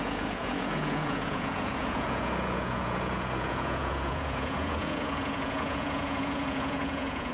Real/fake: fake